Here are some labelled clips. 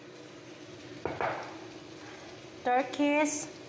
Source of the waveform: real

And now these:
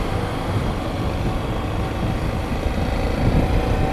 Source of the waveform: real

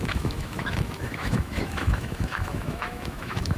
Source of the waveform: fake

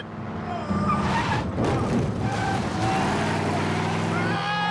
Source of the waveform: real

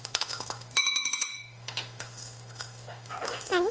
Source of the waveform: fake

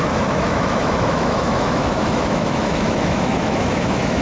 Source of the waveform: fake